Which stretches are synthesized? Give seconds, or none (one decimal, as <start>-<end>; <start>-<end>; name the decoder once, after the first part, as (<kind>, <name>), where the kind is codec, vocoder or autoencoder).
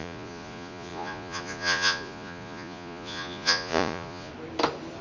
0.0-4.3 (vocoder, Vocos)